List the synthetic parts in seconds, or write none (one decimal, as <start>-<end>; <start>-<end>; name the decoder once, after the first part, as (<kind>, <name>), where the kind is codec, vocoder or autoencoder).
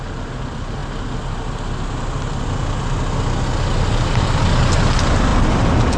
none